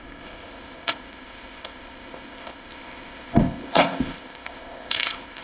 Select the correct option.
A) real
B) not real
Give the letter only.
B